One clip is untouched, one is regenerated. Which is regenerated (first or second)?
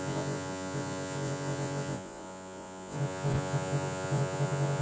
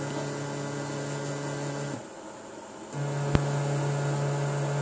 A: first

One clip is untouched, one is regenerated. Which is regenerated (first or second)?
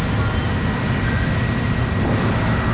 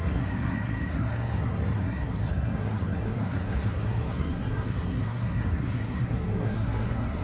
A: second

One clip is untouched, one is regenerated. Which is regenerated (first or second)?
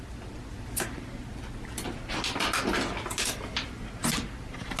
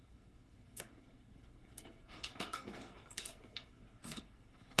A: second